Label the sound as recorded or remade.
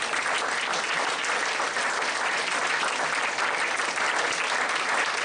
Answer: recorded